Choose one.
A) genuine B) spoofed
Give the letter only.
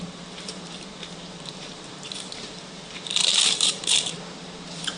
B